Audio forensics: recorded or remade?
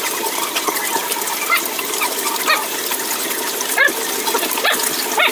recorded